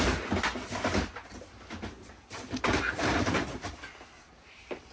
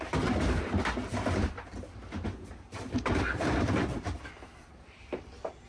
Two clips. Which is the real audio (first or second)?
first